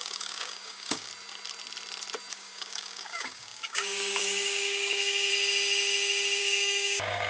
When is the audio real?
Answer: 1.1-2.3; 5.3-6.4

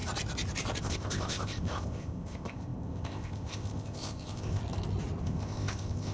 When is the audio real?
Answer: 0.0-0.8; 4.6-5.2

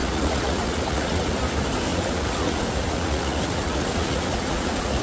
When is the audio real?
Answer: 1.3-1.9

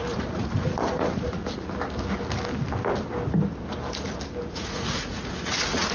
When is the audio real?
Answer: 1.4-4.5

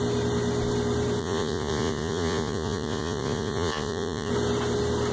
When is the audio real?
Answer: 0.0-1.2; 4.3-5.1